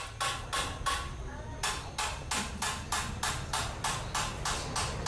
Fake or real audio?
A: real